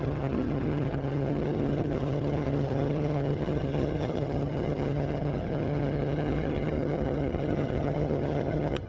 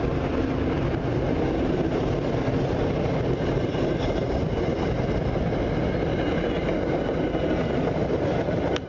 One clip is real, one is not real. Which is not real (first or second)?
first